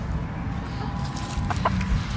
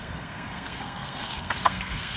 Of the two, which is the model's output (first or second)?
second